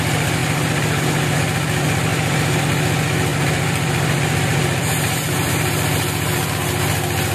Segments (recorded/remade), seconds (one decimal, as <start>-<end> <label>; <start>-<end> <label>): 0.0-3.3 recorded; 3.3-6.5 remade; 6.5-7.3 recorded